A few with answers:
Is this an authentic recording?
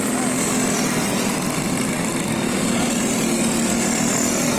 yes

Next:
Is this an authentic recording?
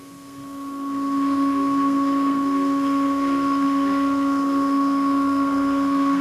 no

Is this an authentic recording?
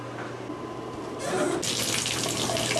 yes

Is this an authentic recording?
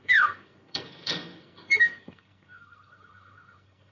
no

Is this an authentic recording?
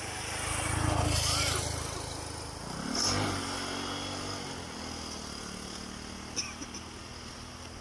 yes